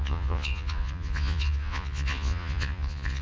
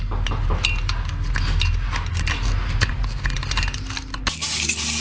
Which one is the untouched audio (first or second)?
second